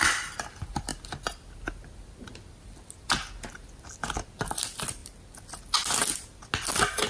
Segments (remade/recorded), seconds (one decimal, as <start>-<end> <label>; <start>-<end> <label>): 0.0-7.1 recorded